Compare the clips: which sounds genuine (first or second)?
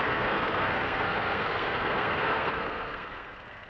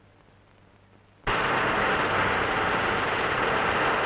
second